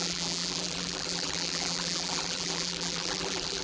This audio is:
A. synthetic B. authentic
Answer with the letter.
A